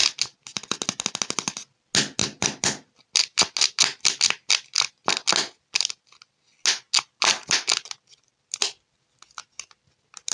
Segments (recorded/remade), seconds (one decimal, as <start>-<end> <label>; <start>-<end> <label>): 0.0-10.3 recorded